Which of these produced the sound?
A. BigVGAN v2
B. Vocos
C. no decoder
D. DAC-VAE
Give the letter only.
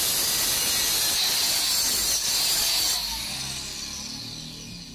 C